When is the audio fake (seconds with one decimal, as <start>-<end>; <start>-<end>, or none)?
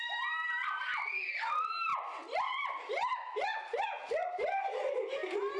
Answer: none